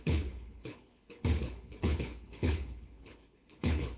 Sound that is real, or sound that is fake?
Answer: fake